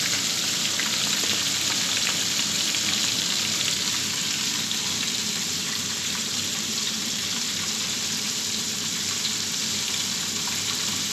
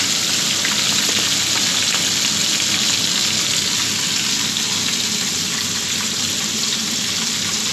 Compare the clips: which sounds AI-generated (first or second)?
first